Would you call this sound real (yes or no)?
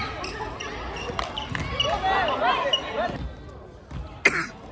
yes